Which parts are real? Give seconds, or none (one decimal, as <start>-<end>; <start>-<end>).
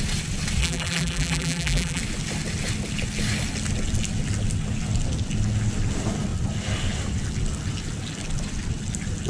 0.0-0.6; 2.0-9.3